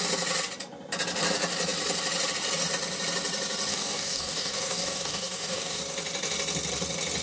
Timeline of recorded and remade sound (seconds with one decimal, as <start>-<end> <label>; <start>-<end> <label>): 0.0-3.7 recorded; 3.7-5.8 remade; 5.8-7.2 recorded